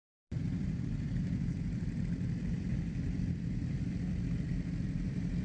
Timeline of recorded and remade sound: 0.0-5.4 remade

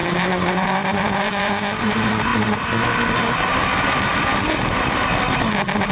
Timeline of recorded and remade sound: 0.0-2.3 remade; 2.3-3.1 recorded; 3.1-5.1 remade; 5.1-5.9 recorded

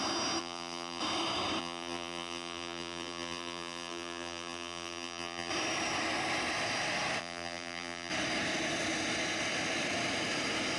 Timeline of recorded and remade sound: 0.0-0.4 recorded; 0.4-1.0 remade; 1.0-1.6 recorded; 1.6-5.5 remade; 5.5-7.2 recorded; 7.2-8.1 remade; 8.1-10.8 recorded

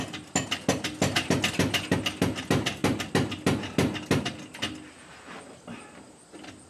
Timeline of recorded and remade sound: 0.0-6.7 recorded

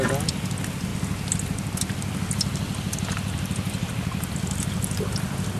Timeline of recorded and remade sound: 0.0-5.6 recorded

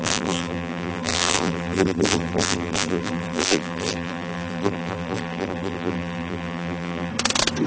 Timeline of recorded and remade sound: 0.0-7.1 remade; 7.1-7.7 recorded